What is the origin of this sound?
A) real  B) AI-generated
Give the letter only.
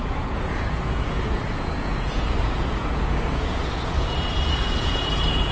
B